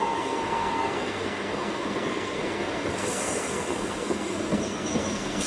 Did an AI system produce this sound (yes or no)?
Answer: yes